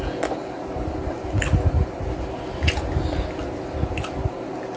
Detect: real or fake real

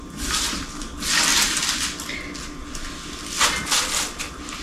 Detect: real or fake real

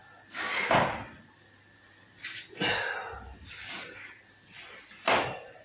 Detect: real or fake real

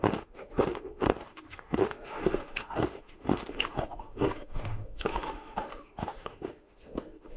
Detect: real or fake fake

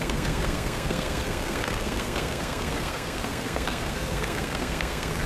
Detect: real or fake fake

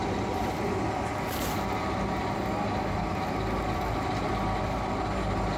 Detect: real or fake real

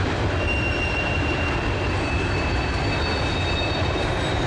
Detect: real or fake real